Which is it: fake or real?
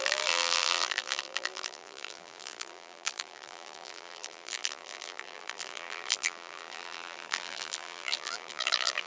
fake